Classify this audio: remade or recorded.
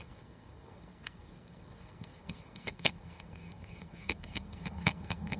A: remade